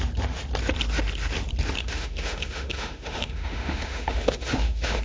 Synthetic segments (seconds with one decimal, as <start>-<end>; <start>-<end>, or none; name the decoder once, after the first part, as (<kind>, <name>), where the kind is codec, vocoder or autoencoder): 1.8-5.0 (autoencoder, DAC-VAE)